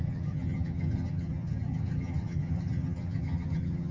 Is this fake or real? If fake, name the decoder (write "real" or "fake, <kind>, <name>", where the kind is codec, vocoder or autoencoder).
fake, vocoder, HiFi-GAN